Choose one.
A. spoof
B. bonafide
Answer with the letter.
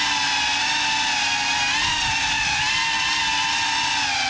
B